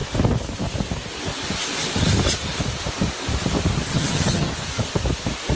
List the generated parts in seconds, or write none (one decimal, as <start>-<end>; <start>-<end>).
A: 3.9-4.5